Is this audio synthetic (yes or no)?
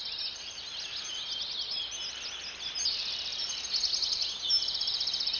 no